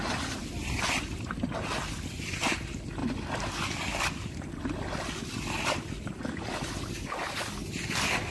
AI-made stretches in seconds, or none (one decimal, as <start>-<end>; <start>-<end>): none